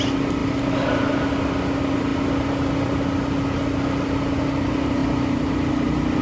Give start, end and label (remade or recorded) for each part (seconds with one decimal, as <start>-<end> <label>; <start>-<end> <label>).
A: 0.0-6.2 recorded